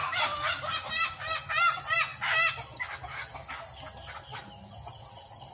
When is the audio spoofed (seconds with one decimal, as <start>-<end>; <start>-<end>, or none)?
none